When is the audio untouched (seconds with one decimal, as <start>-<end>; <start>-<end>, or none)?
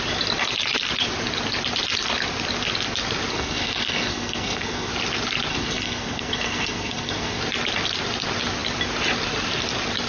0.0-3.3; 4.9-5.5; 7.4-10.1